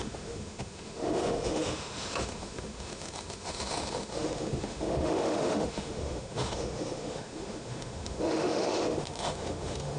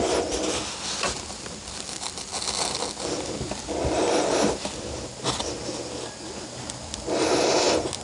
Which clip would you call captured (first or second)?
second